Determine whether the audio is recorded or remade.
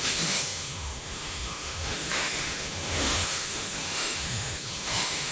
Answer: remade